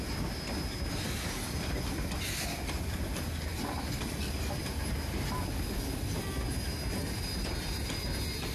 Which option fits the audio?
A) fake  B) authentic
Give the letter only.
B